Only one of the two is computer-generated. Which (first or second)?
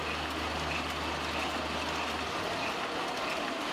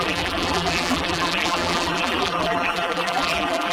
second